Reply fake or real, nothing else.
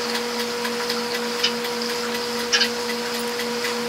real